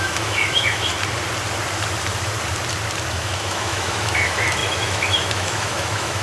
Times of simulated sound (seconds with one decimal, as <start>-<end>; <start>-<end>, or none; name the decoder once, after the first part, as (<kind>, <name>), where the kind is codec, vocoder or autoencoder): 0.0-0.9 (autoencoder, DAC-VAE); 3.1-6.2